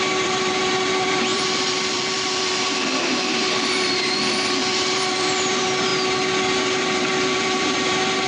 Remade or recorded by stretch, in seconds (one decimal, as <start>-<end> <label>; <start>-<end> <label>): 0.0-5.9 remade; 5.9-6.8 recorded; 6.8-8.3 remade